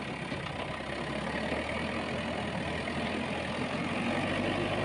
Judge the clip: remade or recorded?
recorded